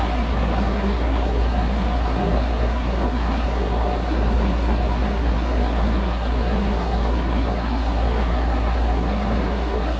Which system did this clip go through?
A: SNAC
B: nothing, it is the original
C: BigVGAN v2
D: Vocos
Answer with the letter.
A